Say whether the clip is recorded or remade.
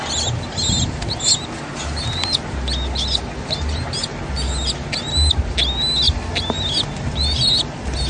recorded